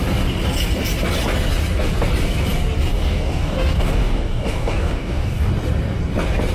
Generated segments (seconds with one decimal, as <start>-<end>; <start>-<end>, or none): 2.9-5.5